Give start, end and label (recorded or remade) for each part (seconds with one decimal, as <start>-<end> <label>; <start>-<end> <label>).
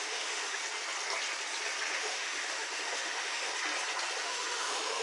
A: 0.0-0.6 remade; 0.6-1.9 recorded; 1.9-3.5 remade; 3.5-4.2 recorded; 4.2-5.0 remade